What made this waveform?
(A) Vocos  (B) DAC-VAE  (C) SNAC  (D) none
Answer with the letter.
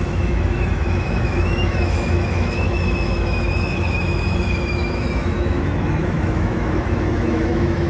B